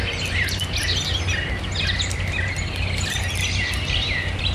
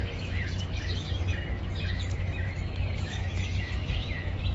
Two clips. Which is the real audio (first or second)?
first